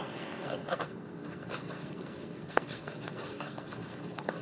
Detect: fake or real fake